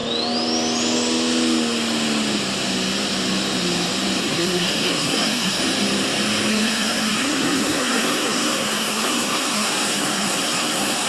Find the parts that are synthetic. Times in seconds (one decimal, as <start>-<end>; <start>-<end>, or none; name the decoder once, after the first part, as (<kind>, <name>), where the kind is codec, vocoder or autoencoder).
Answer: 4.2-5.6 (codec, SNAC); 6.5-11.1